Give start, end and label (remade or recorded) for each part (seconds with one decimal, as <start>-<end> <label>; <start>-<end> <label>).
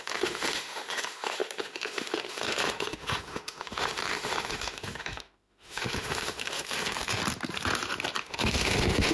0.0-7.2 remade; 7.2-8.2 recorded; 8.2-9.1 remade